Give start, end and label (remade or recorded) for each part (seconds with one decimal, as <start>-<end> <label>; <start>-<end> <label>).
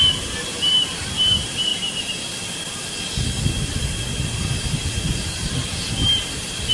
0.0-6.7 recorded